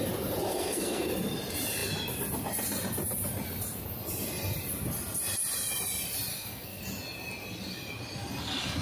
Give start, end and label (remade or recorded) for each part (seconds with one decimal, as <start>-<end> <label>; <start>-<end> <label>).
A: 0.0-0.5 recorded; 0.5-1.1 remade; 1.1-6.3 recorded; 6.3-6.8 remade; 6.8-8.8 recorded